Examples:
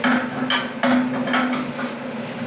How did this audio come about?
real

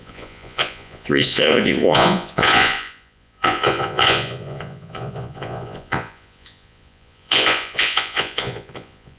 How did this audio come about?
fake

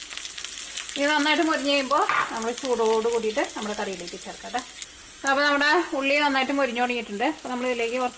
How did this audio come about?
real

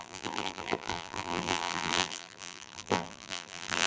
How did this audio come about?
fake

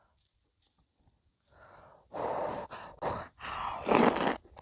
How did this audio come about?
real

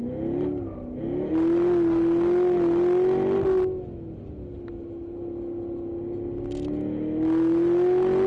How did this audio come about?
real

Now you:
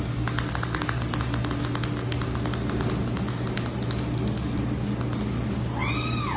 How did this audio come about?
real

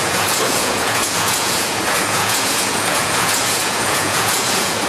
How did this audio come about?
fake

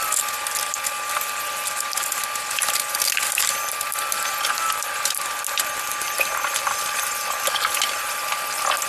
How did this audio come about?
real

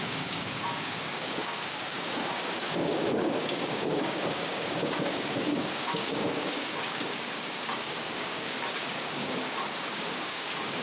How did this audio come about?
fake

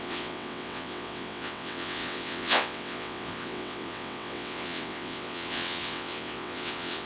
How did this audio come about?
fake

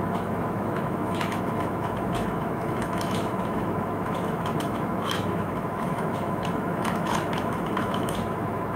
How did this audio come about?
fake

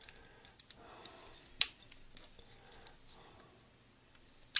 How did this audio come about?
real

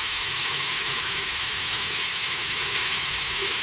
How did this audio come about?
fake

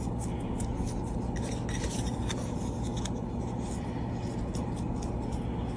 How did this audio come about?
real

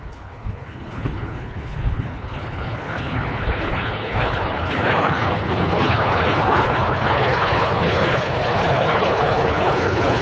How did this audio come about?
fake